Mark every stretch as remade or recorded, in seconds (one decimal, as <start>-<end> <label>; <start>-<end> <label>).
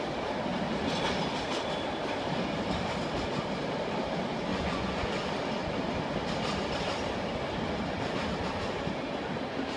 0.0-4.5 recorded; 4.5-5.1 remade; 5.1-9.8 recorded